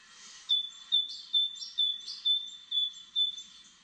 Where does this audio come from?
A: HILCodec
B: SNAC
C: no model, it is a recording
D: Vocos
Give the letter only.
C